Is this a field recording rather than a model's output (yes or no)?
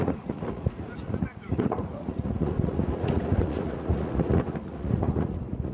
no